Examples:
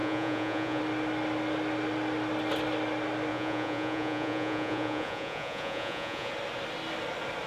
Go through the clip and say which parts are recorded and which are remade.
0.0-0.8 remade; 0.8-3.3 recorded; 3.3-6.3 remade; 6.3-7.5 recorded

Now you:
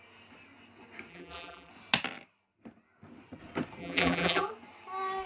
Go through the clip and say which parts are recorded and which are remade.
0.0-1.1 recorded; 1.1-1.7 remade; 1.7-3.8 recorded; 3.8-4.5 remade; 4.5-5.3 recorded

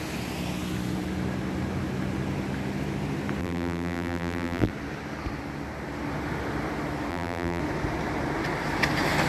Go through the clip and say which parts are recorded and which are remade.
0.0-3.4 recorded; 3.4-4.7 remade; 4.7-7.1 recorded; 7.1-7.6 remade; 7.6-9.3 recorded